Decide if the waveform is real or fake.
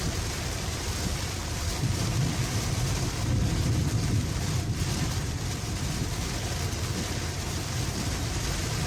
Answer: fake